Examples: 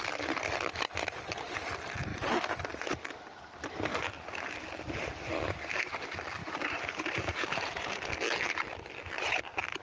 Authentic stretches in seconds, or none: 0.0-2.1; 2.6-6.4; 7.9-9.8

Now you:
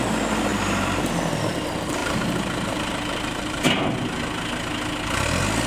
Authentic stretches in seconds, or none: 0.0-0.5; 1.0-2.0; 3.7-5.7

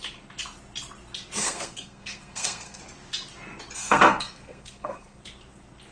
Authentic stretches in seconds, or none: 0.0-1.4; 2.8-3.8; 5.2-5.9

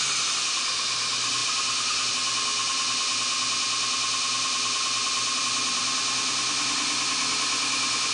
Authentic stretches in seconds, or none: 0.0-8.1